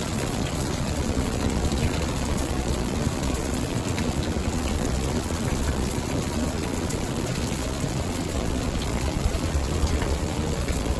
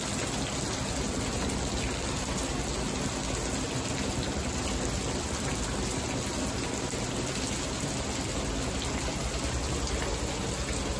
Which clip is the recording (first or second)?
second